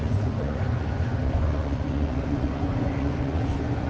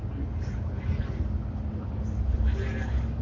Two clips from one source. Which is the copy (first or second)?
first